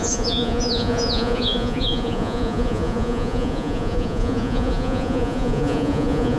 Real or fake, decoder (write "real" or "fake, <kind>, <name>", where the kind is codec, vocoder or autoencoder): fake, vocoder, Vocos